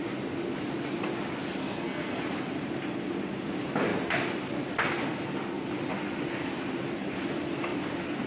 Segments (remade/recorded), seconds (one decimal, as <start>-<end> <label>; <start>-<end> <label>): 0.0-1.6 recorded; 1.6-2.2 remade; 2.2-8.3 recorded